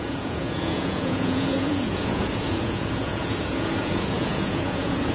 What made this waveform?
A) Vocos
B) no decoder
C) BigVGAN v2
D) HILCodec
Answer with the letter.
A